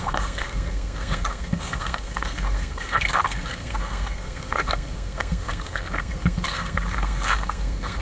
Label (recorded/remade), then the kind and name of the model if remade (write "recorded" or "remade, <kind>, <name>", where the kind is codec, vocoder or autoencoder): remade, codec, SNAC